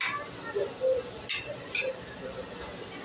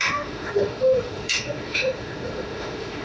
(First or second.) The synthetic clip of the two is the second